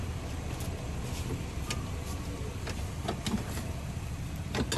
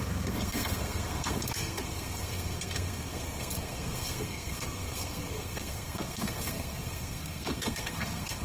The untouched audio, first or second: first